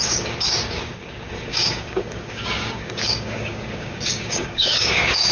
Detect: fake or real fake